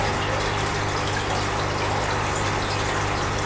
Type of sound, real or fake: real